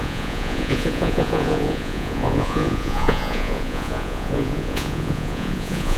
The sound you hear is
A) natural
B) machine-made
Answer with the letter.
B